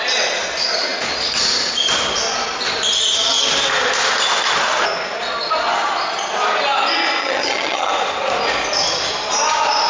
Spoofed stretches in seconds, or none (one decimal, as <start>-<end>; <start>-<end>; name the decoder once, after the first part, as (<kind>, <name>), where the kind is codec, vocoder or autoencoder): 7.2-7.9 (vocoder, HiFi-GAN)